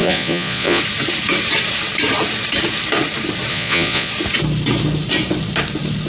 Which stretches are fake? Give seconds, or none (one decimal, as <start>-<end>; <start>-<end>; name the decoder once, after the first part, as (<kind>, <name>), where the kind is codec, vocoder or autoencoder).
0.0-0.8 (vocoder, Vocos); 3.5-4.1